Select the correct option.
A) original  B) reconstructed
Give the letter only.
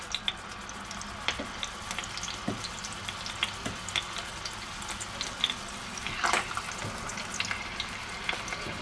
A